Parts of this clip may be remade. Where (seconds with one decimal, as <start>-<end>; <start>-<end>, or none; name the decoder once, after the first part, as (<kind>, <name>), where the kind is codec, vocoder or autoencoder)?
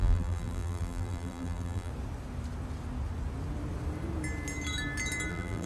0.0-1.9 (vocoder, BigVGAN v2); 5.3-5.7